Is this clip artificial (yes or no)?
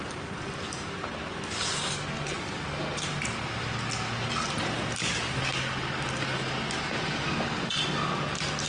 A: no